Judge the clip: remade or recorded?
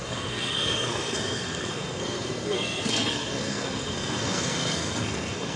remade